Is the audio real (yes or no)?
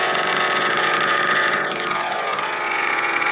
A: no